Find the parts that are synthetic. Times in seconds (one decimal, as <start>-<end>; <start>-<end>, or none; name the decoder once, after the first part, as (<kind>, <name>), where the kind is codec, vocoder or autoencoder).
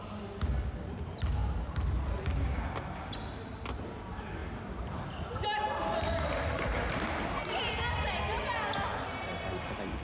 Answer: none